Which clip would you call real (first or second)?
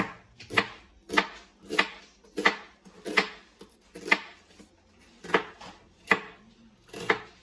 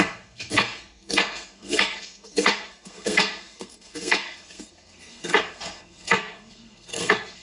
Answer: first